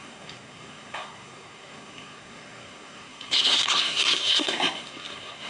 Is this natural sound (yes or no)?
no